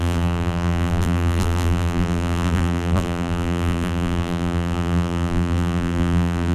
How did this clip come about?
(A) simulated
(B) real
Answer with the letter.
A